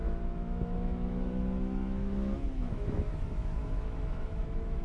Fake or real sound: fake